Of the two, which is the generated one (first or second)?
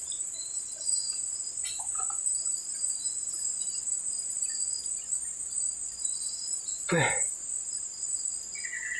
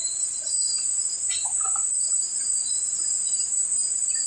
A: second